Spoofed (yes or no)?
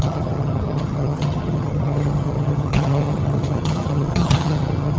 yes